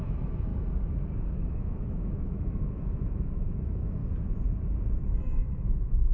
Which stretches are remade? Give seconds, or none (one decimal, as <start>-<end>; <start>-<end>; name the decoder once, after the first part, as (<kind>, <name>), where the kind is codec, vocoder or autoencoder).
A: 0.0-0.5 (autoencoder, DAC-VAE); 1.2-4.0; 5.0-6.1